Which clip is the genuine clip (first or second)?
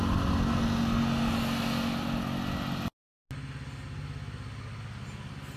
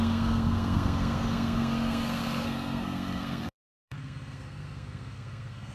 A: first